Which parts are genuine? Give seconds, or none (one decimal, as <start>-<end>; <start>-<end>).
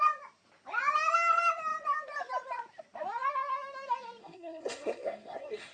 0.0-4.2